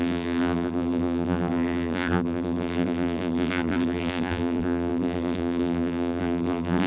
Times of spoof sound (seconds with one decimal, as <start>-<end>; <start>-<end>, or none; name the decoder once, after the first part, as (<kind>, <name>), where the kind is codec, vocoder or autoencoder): 0.0-6.9 (vocoder, BigVGAN v2)